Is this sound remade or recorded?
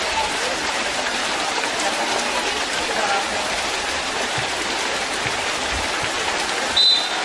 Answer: recorded